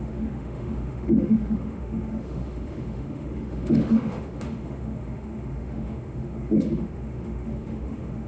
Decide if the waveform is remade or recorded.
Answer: remade